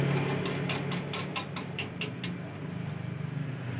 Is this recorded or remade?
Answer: recorded